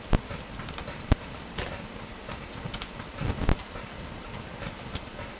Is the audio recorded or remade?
recorded